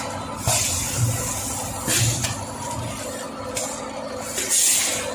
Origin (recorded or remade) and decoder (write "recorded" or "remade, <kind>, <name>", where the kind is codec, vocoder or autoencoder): recorded